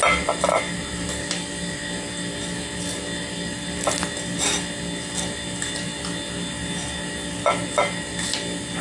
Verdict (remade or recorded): recorded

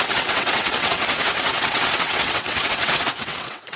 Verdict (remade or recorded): remade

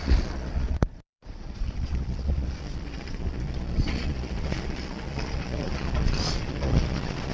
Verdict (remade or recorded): remade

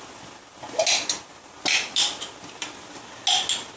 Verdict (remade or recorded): recorded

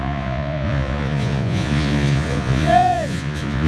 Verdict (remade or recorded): remade